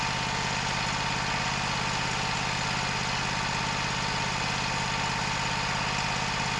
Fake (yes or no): no